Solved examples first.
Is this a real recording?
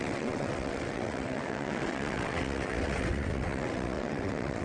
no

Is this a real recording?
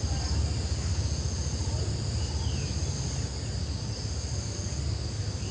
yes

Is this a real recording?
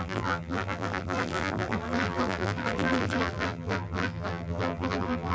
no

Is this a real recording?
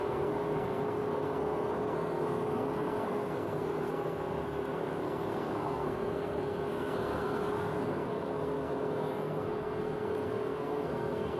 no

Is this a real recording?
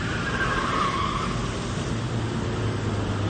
yes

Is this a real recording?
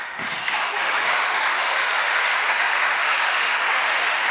no